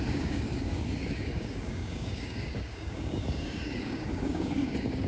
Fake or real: fake